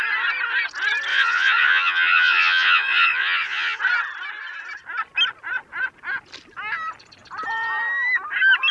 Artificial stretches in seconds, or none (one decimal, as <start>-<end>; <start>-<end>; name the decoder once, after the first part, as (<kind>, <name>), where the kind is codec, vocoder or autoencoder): 1.1-3.8 (vocoder, Vocos)